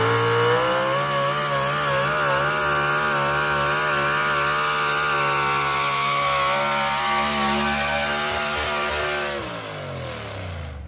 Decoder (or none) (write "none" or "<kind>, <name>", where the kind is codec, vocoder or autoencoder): none